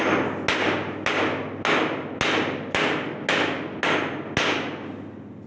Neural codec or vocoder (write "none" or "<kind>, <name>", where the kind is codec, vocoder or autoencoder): none